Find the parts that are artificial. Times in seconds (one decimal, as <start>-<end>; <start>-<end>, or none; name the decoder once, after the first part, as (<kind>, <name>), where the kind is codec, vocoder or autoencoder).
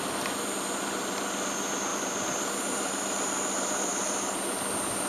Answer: 1.9-5.1 (vocoder, BigVGAN v2)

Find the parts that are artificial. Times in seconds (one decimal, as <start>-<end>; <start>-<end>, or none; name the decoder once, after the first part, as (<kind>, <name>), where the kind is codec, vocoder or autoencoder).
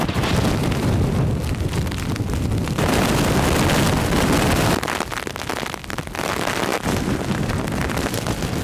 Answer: none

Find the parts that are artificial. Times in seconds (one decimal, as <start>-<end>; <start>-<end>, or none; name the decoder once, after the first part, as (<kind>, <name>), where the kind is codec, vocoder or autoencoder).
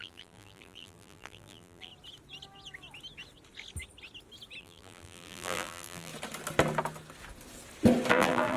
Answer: 0.0-1.9 (vocoder, BigVGAN v2); 4.6-6.1; 8.1-8.6